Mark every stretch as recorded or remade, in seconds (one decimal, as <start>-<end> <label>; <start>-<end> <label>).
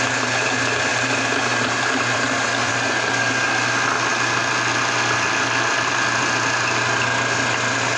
0.0-0.9 recorded; 0.9-2.7 remade; 2.7-8.0 recorded